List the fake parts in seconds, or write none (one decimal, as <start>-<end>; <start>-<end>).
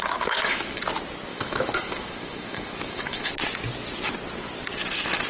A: 0.0-0.8; 1.3-3.3